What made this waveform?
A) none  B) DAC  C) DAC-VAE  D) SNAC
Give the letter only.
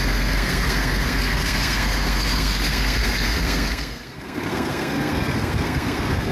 D